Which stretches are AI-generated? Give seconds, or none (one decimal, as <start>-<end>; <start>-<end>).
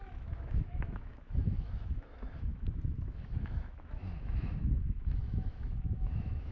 0.0-6.5